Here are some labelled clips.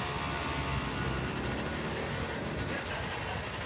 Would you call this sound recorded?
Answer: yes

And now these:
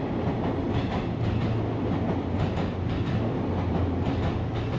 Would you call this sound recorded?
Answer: yes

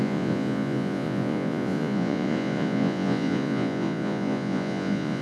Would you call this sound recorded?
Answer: no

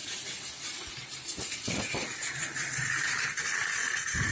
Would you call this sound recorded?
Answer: yes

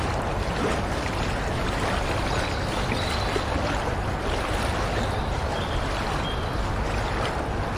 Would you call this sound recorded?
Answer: yes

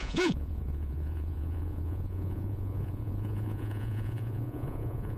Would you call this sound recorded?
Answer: no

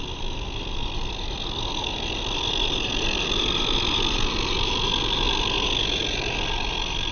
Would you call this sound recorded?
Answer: yes